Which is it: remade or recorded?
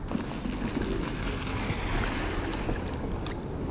recorded